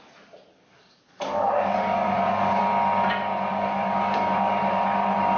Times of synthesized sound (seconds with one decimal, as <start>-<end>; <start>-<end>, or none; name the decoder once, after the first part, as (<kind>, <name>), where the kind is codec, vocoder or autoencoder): 0.5-2.6 (codec, DAC); 3.5-5.4